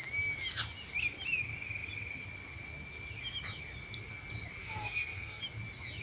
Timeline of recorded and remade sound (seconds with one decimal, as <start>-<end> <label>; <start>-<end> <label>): 0.0-4.6 recorded; 4.6-5.4 remade; 5.4-6.0 recorded